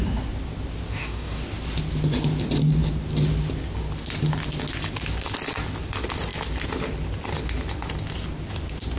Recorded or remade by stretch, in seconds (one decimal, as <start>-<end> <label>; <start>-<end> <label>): 0.0-0.9 recorded; 0.9-1.4 remade; 1.4-9.0 recorded